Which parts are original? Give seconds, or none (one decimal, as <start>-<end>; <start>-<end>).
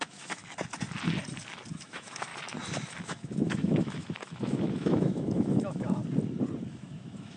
0.4-1.7; 2.3-3.0; 6.0-6.7